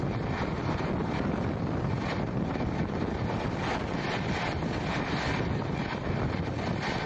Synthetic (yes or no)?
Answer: no